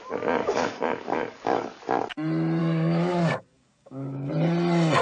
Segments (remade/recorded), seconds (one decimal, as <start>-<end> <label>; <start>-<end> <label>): 0.0-0.4 recorded; 0.4-1.8 remade; 1.8-2.6 recorded; 2.6-4.3 remade; 4.3-5.0 recorded